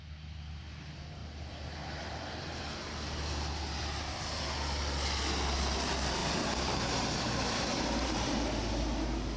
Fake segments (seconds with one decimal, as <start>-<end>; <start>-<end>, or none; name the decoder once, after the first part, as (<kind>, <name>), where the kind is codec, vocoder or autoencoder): 1.2-2.6 (vocoder, BigVGAN v2); 6.2-8.3